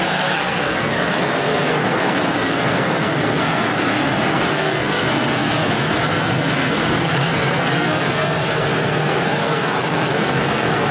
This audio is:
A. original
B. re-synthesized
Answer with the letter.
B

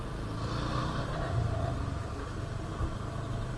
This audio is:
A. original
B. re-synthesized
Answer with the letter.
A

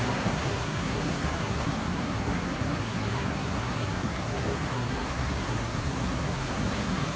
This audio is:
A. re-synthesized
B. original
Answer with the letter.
A